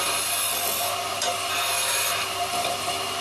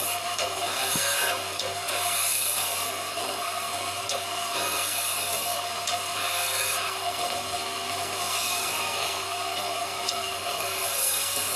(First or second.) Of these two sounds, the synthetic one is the second